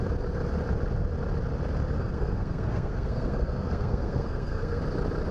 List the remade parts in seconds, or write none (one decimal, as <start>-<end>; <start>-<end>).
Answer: 2.0-4.8